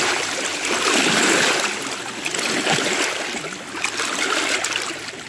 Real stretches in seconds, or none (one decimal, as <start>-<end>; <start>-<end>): 0.0-5.3